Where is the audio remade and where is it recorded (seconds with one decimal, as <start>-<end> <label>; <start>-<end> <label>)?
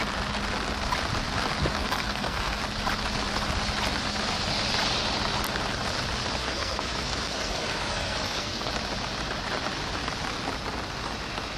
0.0-1.7 recorded; 1.7-2.6 remade; 2.6-6.4 recorded; 6.4-8.7 remade; 8.7-11.6 recorded